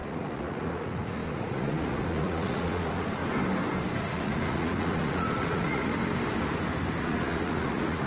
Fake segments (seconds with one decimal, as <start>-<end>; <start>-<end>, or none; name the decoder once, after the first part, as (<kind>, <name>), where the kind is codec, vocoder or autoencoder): 0.0-3.2 (vocoder, Vocos); 4.0-5.9; 7.0-8.1

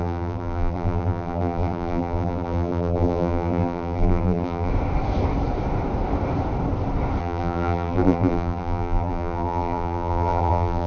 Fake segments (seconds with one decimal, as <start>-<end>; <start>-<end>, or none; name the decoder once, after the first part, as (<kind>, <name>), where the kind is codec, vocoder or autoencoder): 0.0-4.7 (vocoder, BigVGAN v2); 7.2-10.9

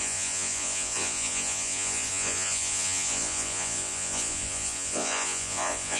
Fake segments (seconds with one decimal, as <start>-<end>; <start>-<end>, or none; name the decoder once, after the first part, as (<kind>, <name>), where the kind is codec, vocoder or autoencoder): 0.0-6.0 (vocoder, Vocos)

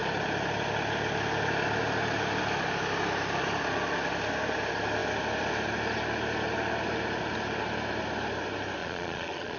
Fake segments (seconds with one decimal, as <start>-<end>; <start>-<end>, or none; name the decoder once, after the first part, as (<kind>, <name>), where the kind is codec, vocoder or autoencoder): 8.8-9.6 (vocoder, Vocos)